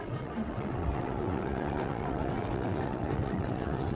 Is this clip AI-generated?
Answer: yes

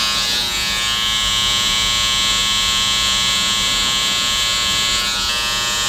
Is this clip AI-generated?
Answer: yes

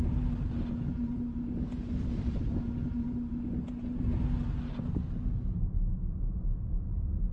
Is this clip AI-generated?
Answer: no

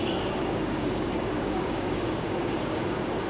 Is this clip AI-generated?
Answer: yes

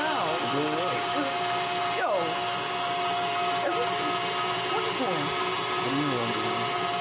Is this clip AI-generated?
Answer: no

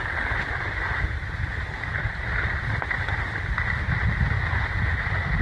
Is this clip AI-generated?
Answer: no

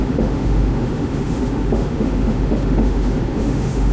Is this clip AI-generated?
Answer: yes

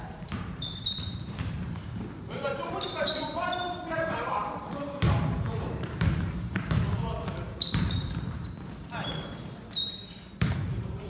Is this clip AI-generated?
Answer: yes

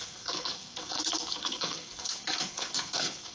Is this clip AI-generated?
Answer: yes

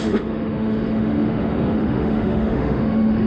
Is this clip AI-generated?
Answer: yes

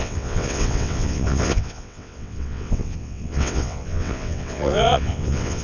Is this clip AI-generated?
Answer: yes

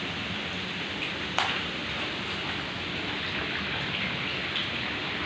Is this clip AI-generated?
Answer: no